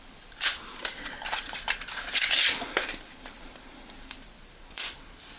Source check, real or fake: fake